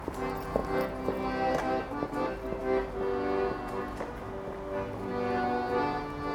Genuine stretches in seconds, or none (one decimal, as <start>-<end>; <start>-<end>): 0.0-6.3